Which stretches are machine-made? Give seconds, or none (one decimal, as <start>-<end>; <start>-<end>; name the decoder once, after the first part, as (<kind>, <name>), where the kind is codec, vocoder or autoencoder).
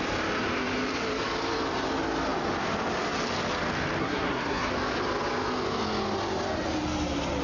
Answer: 4.0-4.7 (codec, SNAC)